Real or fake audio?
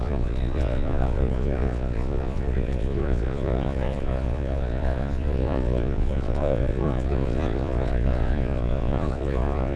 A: fake